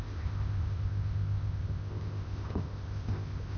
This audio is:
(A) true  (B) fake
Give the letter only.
B